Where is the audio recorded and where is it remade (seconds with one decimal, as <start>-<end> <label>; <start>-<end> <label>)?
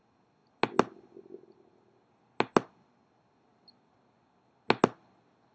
0.0-5.5 recorded